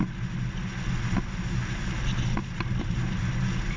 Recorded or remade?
recorded